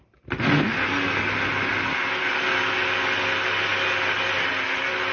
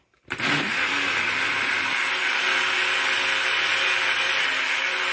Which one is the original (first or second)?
first